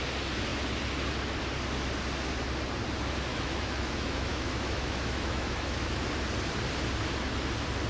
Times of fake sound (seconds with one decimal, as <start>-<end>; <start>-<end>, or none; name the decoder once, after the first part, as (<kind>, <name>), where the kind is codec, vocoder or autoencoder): 3.3-6.0 (autoencoder, DAC-VAE)